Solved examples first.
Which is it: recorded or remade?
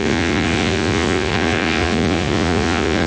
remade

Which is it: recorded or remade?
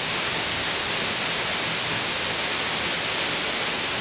recorded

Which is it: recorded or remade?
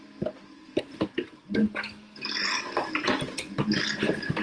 recorded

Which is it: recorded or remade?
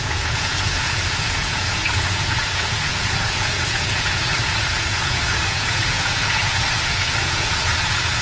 remade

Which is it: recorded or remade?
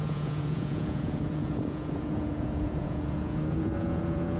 remade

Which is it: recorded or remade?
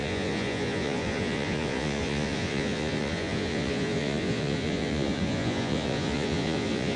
remade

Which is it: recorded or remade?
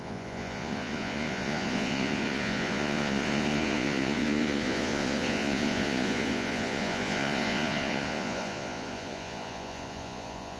remade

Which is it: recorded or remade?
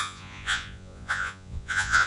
remade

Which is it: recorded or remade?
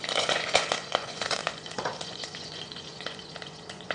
remade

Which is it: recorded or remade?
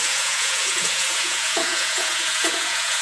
remade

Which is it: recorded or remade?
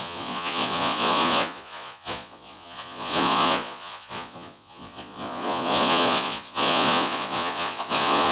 remade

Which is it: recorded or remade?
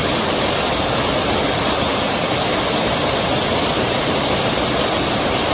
recorded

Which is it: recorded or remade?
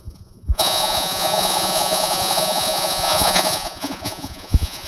remade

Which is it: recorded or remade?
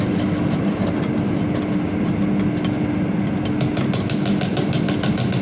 recorded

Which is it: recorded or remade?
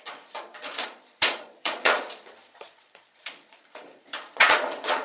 remade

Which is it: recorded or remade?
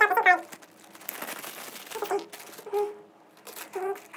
recorded